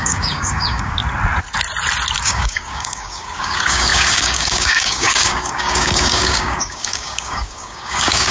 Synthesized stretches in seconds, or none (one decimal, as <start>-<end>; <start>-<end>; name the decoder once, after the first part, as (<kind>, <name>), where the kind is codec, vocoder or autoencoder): 0.0-1.0 (codec, DAC); 2.2-8.3